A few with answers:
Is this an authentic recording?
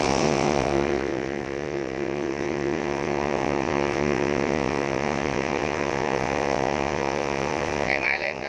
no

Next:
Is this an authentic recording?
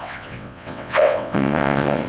no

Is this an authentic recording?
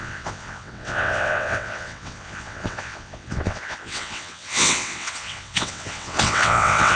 no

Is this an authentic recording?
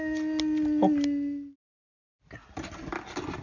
yes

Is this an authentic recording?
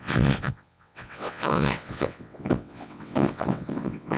no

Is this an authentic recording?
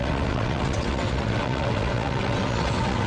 no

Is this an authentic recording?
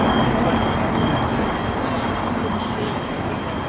yes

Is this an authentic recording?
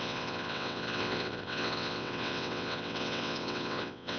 no